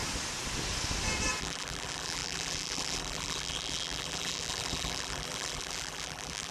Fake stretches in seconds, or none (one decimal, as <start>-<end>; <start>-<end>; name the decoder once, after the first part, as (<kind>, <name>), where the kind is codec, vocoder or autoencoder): 1.4-6.5 (vocoder, BigVGAN v2)